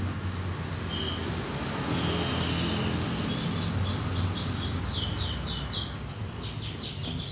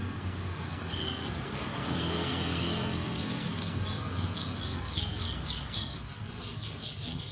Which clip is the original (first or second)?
first